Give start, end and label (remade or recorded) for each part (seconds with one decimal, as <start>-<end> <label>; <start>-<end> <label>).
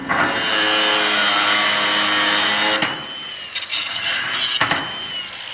0.0-3.7 recorded; 3.7-4.3 remade; 4.3-5.5 recorded